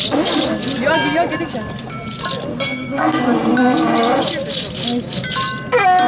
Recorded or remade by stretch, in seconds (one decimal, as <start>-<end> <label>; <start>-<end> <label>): 0.0-2.5 recorded; 2.5-3.2 remade; 3.2-6.1 recorded